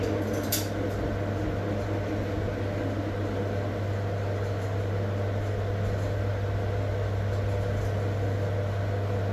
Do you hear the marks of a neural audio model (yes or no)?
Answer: no